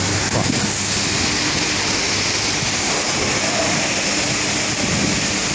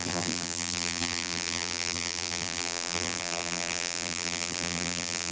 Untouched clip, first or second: first